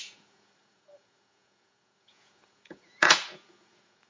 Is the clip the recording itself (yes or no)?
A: no